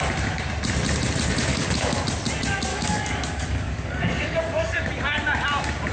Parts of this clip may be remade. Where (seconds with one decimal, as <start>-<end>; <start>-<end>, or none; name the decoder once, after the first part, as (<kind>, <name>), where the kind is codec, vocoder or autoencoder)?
1.5-2.0 (codec, DAC); 2.7-4.9